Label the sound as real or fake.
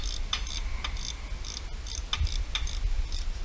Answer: real